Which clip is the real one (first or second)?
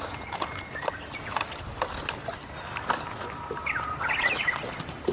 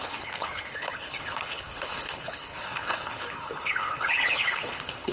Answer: first